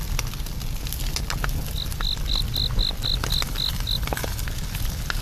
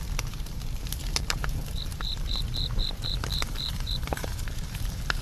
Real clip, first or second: first